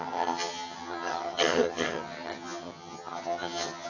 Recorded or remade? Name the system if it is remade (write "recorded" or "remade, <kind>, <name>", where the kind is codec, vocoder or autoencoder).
remade, vocoder, HiFi-GAN